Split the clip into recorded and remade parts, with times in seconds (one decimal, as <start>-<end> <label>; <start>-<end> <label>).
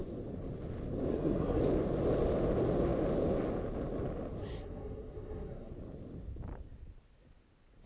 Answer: 0.0-1.1 recorded; 1.1-1.6 remade; 1.6-4.4 recorded; 4.4-5.7 remade; 5.7-7.9 recorded